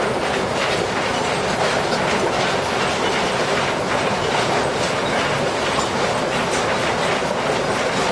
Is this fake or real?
real